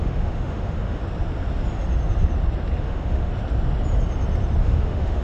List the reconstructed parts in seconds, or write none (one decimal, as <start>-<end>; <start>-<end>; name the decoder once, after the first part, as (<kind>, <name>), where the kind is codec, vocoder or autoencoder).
0.0-1.0 (autoencoder, DAC-VAE); 2.8-3.3; 4.6-5.2